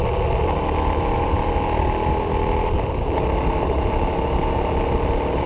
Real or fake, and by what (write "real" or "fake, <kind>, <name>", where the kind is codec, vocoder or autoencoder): real